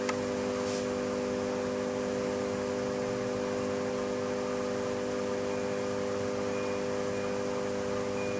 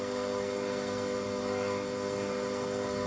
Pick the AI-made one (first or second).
second